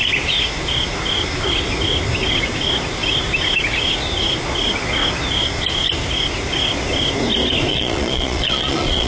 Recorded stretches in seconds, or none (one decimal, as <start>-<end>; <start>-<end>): 0.0-7.7

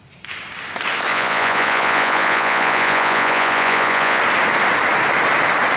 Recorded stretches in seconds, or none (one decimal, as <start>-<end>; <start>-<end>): 0.0-1.1; 4.2-5.8

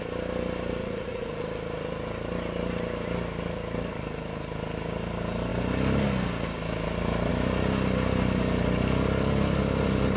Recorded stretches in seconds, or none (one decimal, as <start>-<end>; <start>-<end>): 0.0-0.8; 1.4-10.2

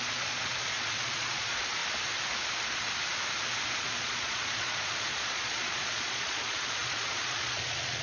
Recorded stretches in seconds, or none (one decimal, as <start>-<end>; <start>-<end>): 1.8-3.8

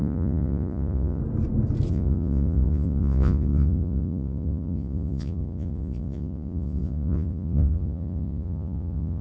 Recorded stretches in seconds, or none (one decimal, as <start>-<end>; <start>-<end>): 1.2-1.9